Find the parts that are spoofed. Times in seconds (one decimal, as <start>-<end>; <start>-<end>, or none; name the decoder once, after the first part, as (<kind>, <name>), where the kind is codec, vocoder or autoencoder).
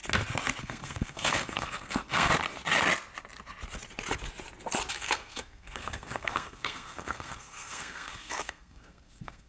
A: 0.6-2.3 (codec, SNAC); 4.9-9.5